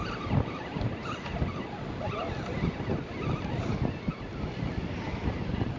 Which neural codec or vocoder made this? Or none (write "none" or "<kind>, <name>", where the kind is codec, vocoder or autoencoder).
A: none